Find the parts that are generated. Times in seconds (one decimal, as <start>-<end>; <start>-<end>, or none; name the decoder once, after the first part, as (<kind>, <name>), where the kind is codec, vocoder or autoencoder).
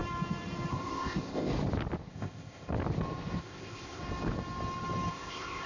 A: 0.7-1.5 (codec, ZipCodec); 2.1-2.7; 3.4-4.0; 5.1-5.7